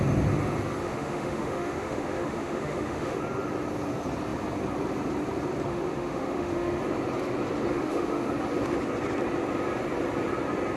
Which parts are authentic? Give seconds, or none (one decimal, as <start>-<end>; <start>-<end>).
0.0-0.8; 3.2-5.7; 6.8-7.7; 8.3-10.8